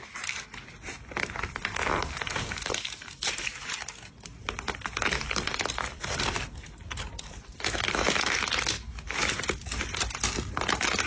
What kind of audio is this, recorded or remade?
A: recorded